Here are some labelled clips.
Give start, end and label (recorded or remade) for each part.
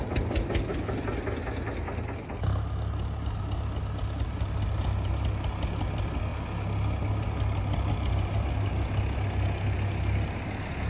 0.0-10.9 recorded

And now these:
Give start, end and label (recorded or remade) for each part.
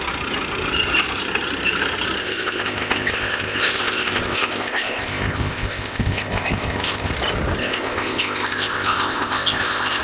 0.0-2.2 recorded; 2.2-7.1 remade; 7.1-7.6 recorded; 7.6-10.0 remade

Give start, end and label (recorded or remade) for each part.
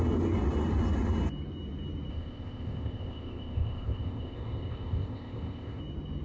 0.0-2.1 recorded; 2.1-5.8 remade; 5.8-6.2 recorded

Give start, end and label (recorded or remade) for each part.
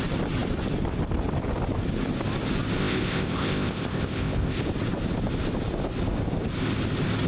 0.0-2.8 recorded; 2.8-4.6 remade; 4.6-7.3 recorded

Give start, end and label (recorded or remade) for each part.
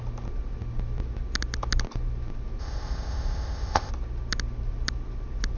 0.0-2.6 recorded; 2.6-3.9 remade; 3.9-5.6 recorded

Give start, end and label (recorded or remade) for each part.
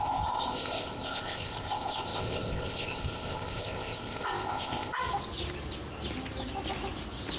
0.0-5.0 remade; 5.0-7.4 recorded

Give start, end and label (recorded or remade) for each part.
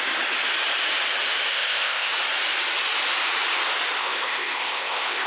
0.0-1.5 recorded; 1.5-2.1 remade; 2.1-4.0 recorded; 4.0-5.3 remade